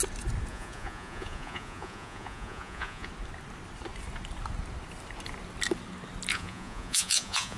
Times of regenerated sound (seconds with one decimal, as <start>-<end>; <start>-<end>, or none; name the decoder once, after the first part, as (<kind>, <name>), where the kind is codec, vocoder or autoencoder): 0.5-3.1 (vocoder, Vocos); 6.3-7.6